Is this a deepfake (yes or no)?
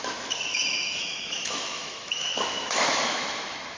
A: yes